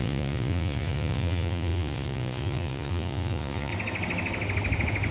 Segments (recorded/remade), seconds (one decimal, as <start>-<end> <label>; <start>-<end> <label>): 0.0-3.7 remade; 3.7-5.1 recorded